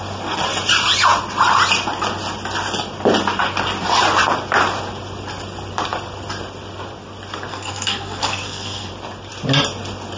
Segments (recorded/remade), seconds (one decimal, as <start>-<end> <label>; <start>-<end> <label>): 0.0-7.5 recorded; 7.5-8.9 remade; 8.9-10.2 recorded